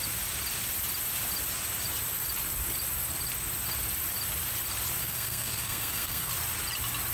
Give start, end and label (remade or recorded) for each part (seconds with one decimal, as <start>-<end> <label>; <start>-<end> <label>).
0.0-5.0 recorded; 5.0-6.3 remade; 6.3-7.1 recorded